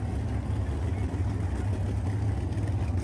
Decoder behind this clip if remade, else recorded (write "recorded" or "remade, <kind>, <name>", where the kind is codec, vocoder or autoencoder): recorded